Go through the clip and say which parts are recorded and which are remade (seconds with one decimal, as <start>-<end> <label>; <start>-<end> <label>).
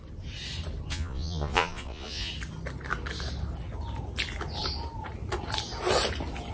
0.0-0.9 recorded; 0.9-2.3 remade; 2.3-6.5 recorded